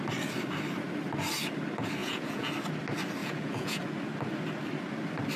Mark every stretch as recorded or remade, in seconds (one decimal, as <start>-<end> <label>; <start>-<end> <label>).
0.0-2.0 recorded; 2.0-2.5 remade; 2.5-3.2 recorded; 3.2-3.8 remade; 3.8-5.4 recorded